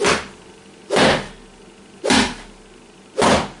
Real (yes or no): yes